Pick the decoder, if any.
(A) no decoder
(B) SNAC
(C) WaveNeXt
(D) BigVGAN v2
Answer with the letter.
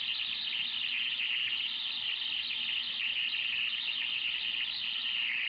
A